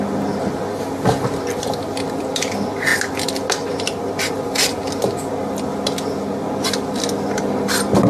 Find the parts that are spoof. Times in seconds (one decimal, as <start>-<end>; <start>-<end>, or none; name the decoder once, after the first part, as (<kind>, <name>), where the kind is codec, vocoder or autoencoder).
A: none